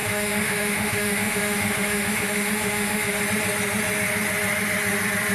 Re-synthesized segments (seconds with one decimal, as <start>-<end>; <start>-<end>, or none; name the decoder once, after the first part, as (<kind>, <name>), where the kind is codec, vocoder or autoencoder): 0.0-3.2 (autoencoder, DAC-VAE)